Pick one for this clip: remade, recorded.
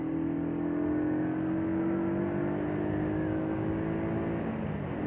recorded